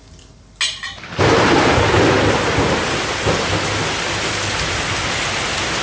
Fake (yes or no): no